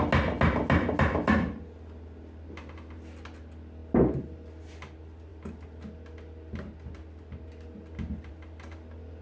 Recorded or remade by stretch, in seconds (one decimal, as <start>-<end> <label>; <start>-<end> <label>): 0.0-9.2 recorded